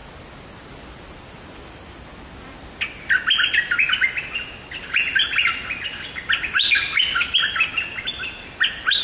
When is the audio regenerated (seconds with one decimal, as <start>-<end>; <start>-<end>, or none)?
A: none